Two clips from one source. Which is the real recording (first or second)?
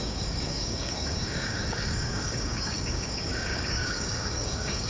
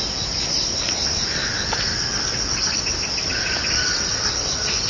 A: second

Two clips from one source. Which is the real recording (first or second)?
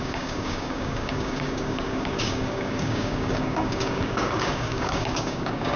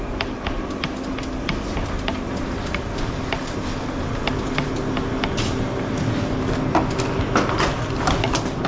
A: second